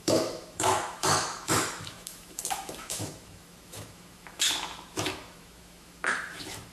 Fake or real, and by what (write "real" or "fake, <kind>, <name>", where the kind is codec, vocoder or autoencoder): fake, autoencoder, DAC-VAE